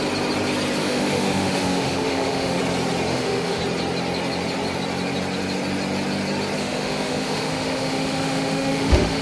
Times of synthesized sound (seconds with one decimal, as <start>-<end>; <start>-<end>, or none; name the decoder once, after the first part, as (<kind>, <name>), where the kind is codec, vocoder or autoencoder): 0.8-2.6 (autoencoder, DAC-VAE); 3.1-3.6; 6.6-9.2